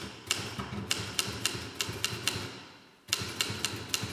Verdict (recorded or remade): recorded